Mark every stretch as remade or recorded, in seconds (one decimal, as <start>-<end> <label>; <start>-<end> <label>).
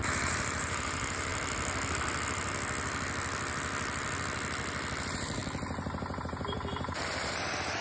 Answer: 0.0-1.3 remade; 1.3-5.0 recorded; 5.0-5.4 remade; 5.4-6.2 recorded; 6.2-7.8 remade